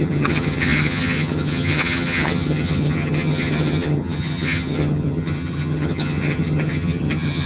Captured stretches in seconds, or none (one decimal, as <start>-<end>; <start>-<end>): none